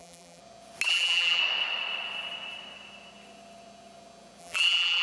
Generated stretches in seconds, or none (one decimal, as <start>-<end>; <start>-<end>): 0.0-0.4; 0.9-1.4; 4.4-5.0